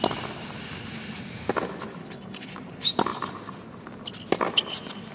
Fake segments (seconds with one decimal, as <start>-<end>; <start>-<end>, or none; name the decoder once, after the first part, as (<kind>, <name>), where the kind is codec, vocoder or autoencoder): 2.0-2.5 (codec, HILCodec)